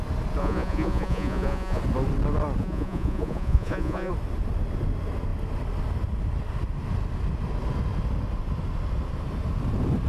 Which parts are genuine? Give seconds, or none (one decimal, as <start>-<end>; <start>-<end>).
0.0-0.4; 1.8-2.6; 4.1-10.1